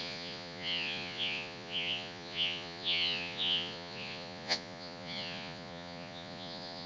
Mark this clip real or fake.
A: fake